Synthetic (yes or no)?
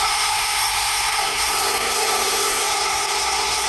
yes